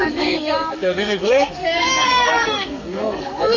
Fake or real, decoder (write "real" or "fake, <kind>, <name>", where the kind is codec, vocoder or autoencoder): fake, codec, SNAC